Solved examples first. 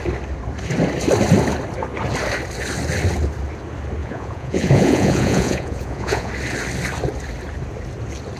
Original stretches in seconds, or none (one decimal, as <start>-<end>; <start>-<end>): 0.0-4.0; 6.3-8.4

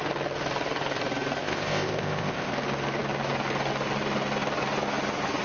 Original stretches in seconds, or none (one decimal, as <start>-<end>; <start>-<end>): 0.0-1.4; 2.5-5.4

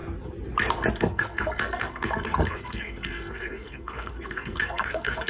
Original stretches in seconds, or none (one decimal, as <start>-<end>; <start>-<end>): 0.0-1.0

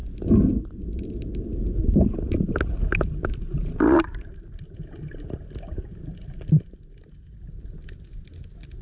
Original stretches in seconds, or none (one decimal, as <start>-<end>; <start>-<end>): 2.5-5.8; 6.5-8.8